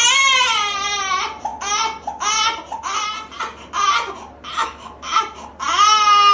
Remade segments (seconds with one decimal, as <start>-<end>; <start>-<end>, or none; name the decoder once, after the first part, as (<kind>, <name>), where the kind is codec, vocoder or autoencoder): 4.6-5.2 (autoencoder, DAC-VAE)